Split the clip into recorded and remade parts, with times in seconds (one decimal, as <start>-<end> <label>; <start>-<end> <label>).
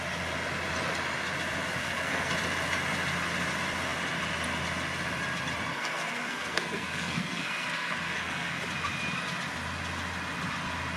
0.0-1.8 recorded; 1.8-2.3 remade; 2.3-5.7 recorded; 5.7-8.6 remade; 8.6-11.0 recorded